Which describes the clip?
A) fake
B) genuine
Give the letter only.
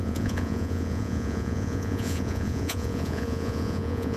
A